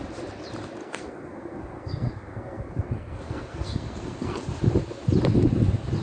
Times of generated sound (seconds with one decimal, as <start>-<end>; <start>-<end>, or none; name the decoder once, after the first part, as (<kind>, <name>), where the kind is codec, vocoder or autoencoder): 0.8-4.4 (codec, SNAC)